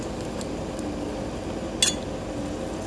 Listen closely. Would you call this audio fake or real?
real